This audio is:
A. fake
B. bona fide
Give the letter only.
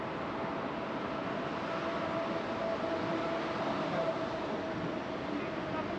B